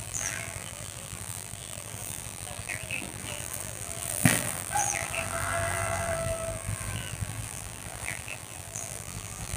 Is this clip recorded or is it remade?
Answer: remade